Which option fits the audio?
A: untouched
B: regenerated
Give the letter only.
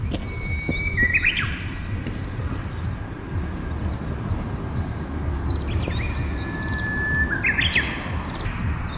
A